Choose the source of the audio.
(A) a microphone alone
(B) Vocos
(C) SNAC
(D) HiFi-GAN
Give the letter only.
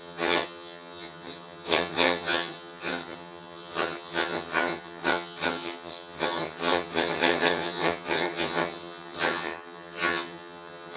D